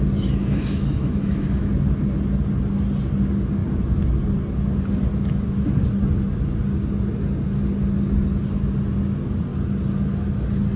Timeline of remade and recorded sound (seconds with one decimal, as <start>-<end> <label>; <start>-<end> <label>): 0.0-0.4 recorded; 0.4-1.7 remade; 1.7-10.8 recorded